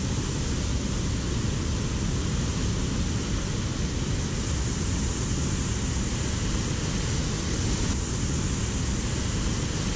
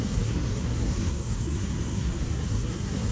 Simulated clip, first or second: second